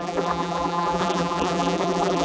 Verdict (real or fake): fake